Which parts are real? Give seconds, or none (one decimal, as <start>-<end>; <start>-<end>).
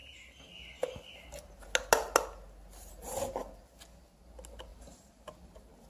0.0-4.7; 5.3-5.9